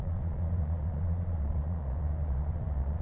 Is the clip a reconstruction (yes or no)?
yes